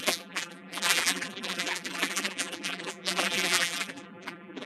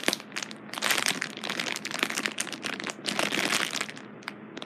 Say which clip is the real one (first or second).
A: second